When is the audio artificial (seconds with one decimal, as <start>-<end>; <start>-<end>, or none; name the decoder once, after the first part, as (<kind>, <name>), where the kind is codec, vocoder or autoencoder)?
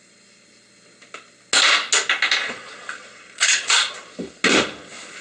2.4-3.9 (vocoder, Vocos)